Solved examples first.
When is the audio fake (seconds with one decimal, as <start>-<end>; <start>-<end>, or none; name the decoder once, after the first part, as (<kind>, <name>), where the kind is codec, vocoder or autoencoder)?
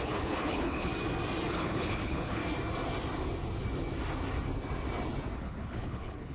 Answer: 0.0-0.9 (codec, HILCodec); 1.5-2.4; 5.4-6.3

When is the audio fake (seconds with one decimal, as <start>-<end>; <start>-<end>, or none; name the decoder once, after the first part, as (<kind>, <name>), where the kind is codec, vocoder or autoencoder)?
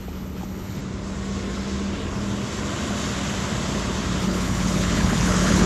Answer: 0.0-0.8 (codec, HILCodec); 4.2-5.7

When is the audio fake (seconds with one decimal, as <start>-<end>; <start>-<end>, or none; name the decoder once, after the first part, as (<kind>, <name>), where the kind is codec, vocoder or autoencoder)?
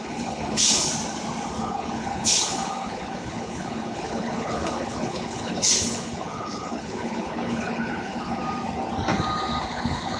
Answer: 0.0-0.9 (codec, HILCodec); 1.6-8.4; 9.6-10.2